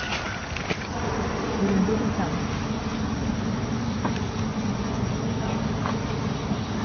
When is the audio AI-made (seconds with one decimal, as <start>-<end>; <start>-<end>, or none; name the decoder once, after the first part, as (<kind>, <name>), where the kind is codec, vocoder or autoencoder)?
4.5-5.1 (vocoder, Vocos)